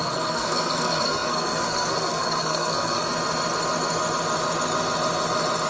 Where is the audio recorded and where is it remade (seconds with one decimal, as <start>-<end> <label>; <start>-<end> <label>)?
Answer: 0.0-3.1 remade; 3.1-5.7 recorded